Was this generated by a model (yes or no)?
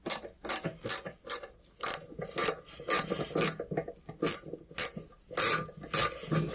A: no